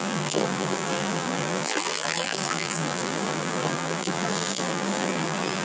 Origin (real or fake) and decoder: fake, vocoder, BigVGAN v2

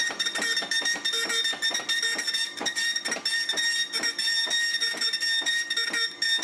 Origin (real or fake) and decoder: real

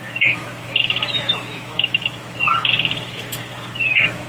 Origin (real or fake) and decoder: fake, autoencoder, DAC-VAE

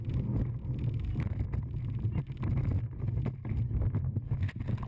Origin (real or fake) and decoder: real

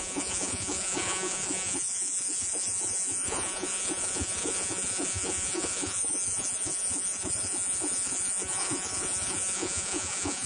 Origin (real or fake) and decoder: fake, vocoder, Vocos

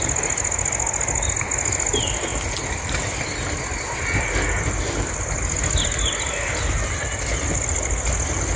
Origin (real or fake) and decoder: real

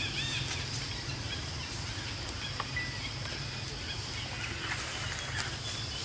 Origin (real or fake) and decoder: real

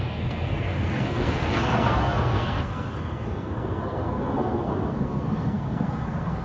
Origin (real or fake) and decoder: fake, codec, SNAC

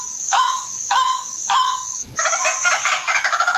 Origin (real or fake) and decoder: fake, codec, DAC